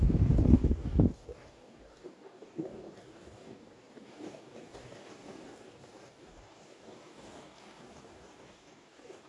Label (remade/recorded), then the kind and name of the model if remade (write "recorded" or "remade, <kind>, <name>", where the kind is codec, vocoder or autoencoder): remade, codec, DAC